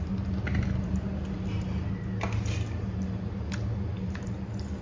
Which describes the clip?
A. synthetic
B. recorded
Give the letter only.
B